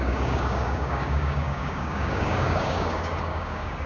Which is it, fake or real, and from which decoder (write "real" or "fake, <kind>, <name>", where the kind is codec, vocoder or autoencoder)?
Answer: fake, codec, DAC